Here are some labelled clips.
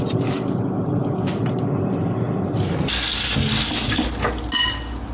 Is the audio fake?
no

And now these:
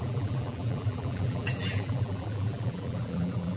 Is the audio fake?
yes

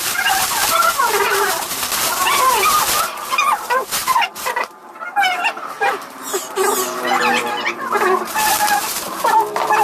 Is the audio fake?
yes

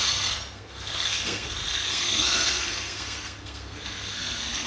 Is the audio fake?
yes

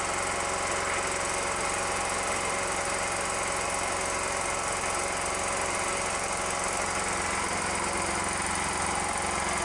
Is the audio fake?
no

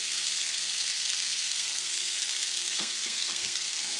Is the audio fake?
yes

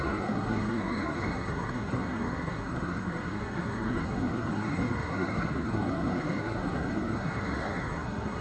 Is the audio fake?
yes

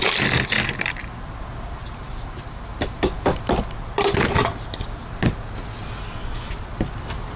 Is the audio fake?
no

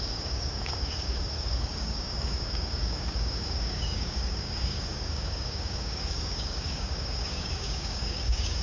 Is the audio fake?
yes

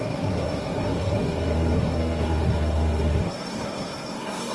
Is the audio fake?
yes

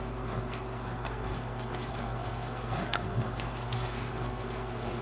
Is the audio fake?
yes